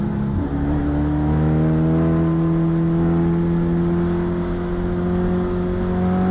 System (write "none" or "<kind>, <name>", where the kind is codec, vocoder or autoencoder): none